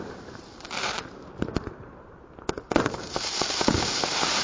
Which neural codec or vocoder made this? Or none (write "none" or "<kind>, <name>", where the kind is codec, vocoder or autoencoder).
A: vocoder, BigVGAN v2